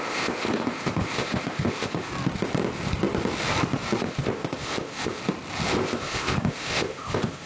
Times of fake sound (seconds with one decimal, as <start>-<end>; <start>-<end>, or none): 0.0-2.1; 4.0-5.2; 5.7-7.5

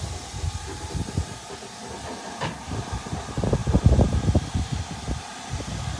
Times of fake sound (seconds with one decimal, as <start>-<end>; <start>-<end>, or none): none

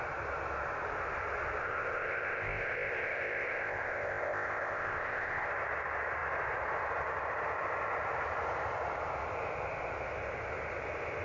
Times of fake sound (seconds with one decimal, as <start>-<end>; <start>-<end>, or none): 1.6-5.5

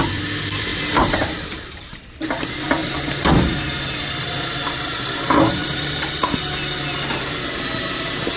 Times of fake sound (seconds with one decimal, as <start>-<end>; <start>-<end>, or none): 0.7-2.0; 2.8-3.3; 5.6-6.2

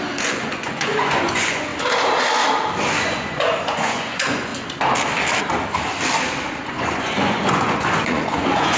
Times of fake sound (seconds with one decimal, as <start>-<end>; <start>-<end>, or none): 0.0-1.7; 3.0-4.5; 6.6-8.8